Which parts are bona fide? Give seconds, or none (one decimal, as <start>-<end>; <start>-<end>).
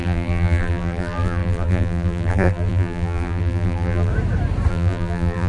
4.1-4.7